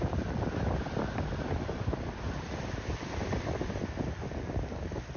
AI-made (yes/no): yes